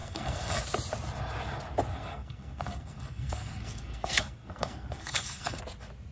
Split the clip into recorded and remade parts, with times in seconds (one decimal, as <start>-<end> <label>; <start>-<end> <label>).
0.0-0.6 remade; 0.6-1.9 recorded; 1.9-5.6 remade; 5.6-6.1 recorded